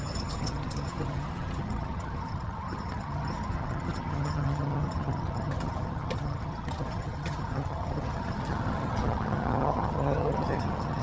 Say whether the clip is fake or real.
fake